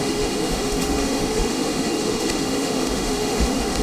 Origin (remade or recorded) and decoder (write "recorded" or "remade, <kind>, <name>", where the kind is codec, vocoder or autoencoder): remade, autoencoder, DAC-VAE